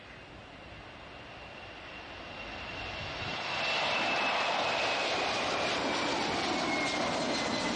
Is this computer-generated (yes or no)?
no